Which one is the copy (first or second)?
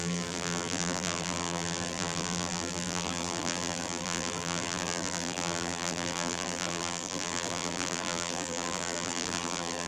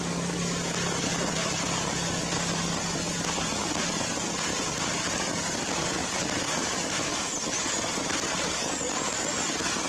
first